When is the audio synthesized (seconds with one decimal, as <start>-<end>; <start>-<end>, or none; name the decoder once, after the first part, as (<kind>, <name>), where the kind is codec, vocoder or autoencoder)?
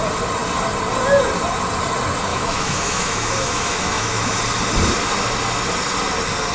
2.3-4.4 (autoencoder, DAC-VAE)